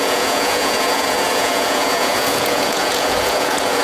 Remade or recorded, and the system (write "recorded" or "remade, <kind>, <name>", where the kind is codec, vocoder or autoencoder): remade, vocoder, Vocos